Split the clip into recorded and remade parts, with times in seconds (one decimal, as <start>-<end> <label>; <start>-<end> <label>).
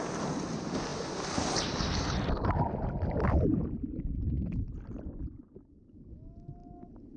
0.0-7.2 recorded